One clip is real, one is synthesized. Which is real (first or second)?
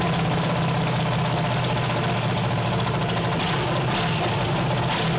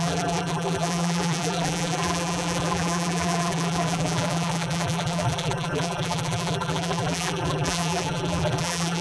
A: first